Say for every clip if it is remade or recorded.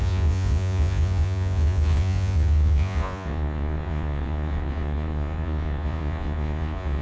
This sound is remade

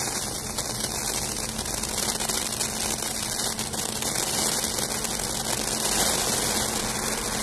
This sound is recorded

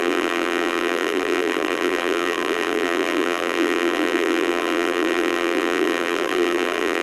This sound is remade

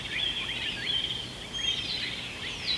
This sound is recorded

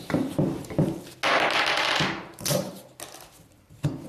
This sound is recorded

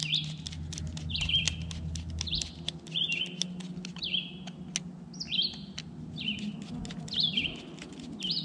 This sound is recorded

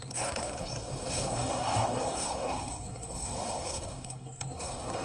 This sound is remade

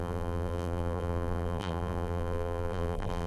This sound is remade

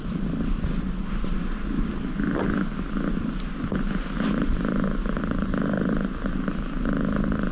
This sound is recorded